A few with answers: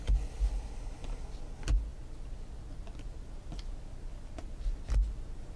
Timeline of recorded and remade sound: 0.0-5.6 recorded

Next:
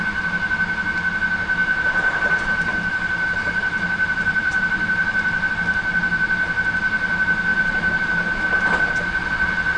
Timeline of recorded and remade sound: 0.0-1.6 recorded; 1.6-5.5 remade; 5.5-7.5 recorded; 7.5-8.9 remade; 8.9-9.8 recorded